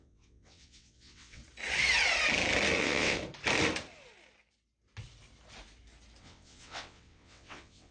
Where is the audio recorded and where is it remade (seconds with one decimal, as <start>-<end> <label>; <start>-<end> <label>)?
0.0-1.4 remade; 1.4-2.8 recorded; 2.8-3.2 remade; 3.2-6.2 recorded; 6.2-7.9 remade